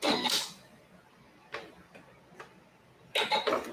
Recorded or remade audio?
recorded